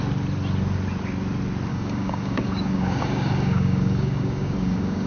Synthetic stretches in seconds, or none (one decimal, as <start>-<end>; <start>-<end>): 1.7-5.1

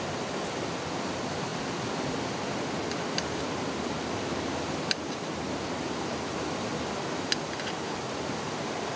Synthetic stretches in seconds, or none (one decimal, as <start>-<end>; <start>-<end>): none

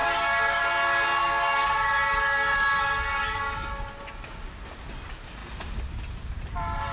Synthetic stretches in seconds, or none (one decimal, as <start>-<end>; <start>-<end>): 0.0-0.6; 1.2-3.9